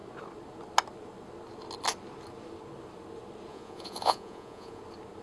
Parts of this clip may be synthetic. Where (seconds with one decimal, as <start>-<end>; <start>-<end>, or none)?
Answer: 3.5-4.8